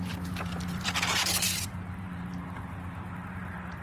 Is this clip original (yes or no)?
no